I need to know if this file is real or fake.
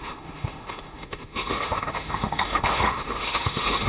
fake